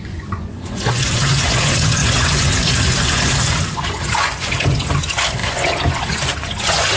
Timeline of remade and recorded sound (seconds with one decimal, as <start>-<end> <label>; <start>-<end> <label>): 0.0-7.0 remade